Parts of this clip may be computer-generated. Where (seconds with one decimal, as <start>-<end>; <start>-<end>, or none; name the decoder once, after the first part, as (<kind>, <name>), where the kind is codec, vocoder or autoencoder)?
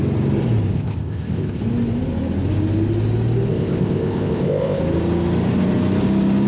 0.7-1.6 (codec, ZipCodec); 3.5-4.8